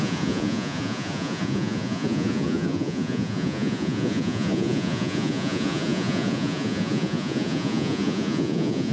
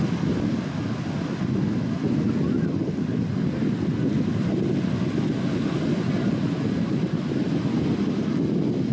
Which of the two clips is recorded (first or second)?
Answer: second